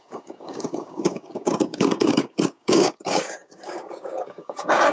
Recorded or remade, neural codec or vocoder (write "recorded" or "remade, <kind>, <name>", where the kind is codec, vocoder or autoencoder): remade, codec, DAC